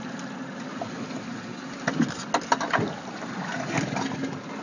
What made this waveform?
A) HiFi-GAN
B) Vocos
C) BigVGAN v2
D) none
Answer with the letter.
D